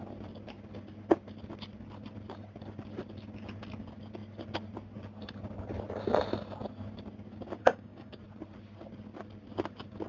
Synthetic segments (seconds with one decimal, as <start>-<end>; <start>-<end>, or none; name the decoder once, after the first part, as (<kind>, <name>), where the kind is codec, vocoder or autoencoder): 7.6-8.2 (codec, DAC)